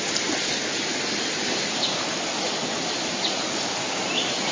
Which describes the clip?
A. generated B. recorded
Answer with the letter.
B